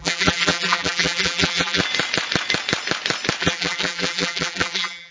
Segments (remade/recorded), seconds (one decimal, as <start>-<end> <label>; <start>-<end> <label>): 0.0-1.8 remade; 1.8-3.4 recorded; 3.4-5.1 remade